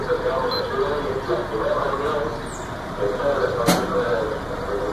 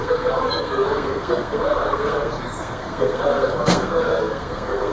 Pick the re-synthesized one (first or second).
second